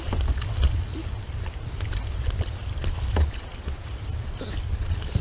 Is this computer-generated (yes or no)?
no